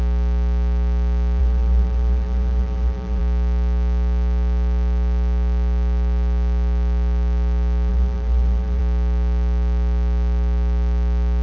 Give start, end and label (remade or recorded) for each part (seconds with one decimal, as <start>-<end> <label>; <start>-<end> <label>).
0.0-1.4 recorded; 1.4-3.2 remade; 3.2-7.9 recorded; 7.9-8.8 remade; 8.8-11.4 recorded